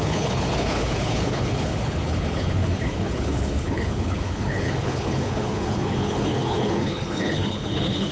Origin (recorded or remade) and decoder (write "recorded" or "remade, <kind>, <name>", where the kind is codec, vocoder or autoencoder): remade, codec, HILCodec